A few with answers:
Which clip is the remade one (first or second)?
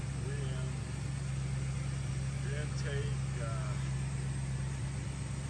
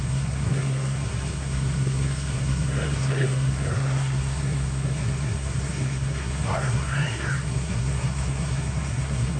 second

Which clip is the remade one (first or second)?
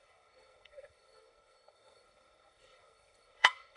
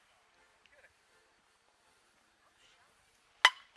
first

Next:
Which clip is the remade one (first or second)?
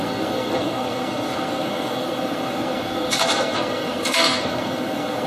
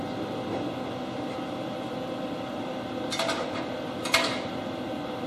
first